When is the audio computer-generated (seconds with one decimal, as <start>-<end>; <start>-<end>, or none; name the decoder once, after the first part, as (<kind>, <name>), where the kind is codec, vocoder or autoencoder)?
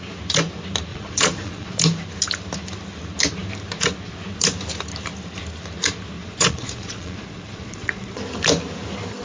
0.9-1.8 (vocoder, Vocos); 6.2-8.2